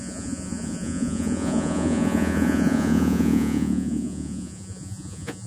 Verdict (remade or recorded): remade